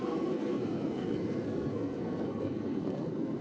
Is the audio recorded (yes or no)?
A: no